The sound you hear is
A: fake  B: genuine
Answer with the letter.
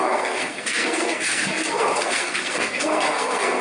A